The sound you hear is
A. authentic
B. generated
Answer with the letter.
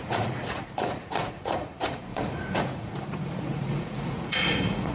B